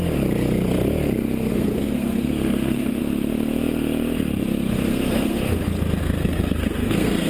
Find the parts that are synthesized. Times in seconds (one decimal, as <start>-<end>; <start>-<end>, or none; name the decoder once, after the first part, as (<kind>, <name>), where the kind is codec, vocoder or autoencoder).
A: 1.5-3.0 (codec, SNAC); 4.9-5.6; 6.0-7.3